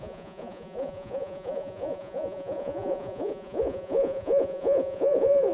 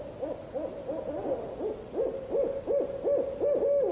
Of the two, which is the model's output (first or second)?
first